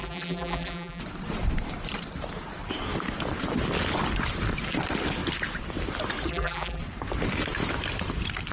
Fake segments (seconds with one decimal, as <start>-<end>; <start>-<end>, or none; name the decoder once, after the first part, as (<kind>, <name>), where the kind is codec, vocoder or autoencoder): 0.0-1.0 (vocoder, BigVGAN v2); 6.3-6.8